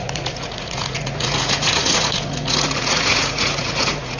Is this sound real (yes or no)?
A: no